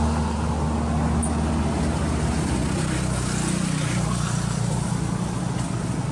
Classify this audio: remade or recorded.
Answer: recorded